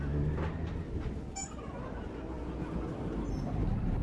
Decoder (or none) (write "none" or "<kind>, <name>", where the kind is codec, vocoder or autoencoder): none